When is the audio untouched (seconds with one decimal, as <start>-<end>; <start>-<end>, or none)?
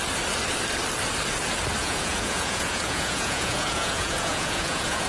0.0-1.8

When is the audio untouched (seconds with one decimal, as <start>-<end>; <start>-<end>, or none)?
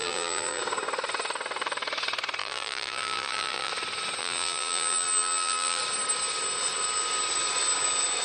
0.6-2.4; 3.7-4.2; 5.8-8.2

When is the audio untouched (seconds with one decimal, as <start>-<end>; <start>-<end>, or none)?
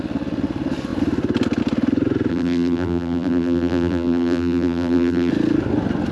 0.0-2.3; 5.3-6.1